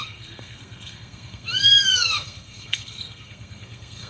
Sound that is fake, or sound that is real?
fake